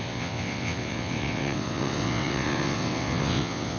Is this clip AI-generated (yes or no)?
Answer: yes